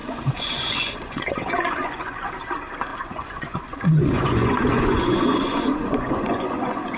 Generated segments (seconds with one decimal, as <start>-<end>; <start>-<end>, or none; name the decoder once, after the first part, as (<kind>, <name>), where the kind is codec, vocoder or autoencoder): 0.0-2.3 (vocoder, Vocos); 2.9-7.0